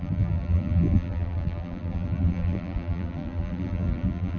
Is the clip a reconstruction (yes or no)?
yes